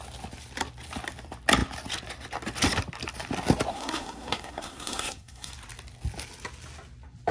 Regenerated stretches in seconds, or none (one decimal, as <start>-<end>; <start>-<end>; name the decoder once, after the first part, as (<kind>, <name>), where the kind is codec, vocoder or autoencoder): 3.7-5.5 (codec, SNAC)

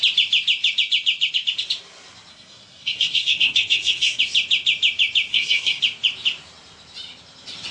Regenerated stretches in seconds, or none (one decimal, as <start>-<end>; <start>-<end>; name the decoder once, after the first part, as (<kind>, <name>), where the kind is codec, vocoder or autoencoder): 2.3-4.2 (codec, SNAC); 5.3-5.8